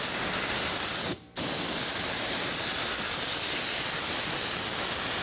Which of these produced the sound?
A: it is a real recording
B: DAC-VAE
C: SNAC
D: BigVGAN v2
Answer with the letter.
A